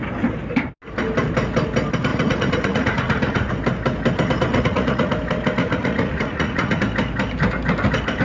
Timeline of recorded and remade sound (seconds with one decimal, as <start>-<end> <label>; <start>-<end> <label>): 0.0-2.1 recorded; 2.1-3.5 remade; 3.5-4.5 recorded; 4.5-5.1 remade; 5.1-5.6 recorded; 5.6-6.8 remade; 6.8-8.2 recorded